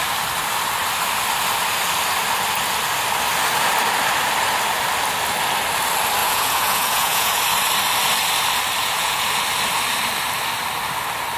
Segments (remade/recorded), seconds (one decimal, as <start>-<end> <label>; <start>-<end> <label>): 0.0-6.2 recorded; 6.2-7.4 remade; 7.4-8.8 recorded; 8.8-9.3 remade; 9.3-11.4 recorded